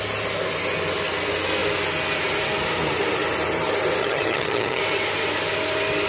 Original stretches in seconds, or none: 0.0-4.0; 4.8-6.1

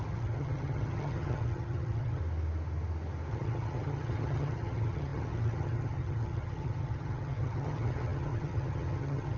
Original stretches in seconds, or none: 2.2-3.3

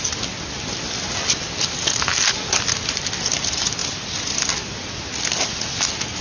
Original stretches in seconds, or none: 0.0-6.2

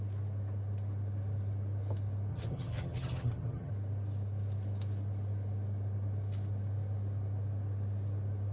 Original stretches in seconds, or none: 0.0-2.3; 3.7-8.5

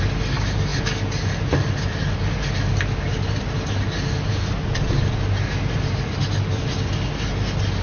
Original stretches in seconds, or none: 0.0-7.8

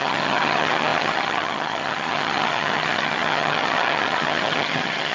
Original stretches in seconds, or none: none

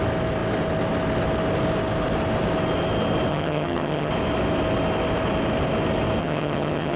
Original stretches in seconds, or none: 0.0-3.3; 4.1-6.2